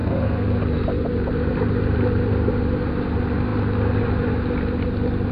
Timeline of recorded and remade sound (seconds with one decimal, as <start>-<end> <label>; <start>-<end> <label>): 0.0-0.6 remade; 0.6-5.3 recorded